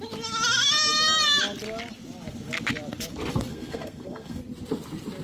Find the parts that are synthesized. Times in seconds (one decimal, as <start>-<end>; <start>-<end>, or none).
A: 3.5-4.4